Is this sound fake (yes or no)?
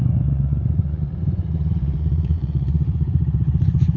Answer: yes